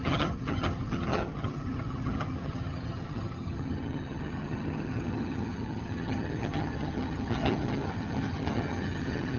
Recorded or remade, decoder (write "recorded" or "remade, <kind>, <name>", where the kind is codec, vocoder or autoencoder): remade, vocoder, HiFi-GAN